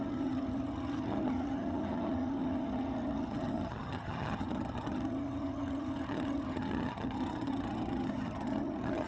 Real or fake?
fake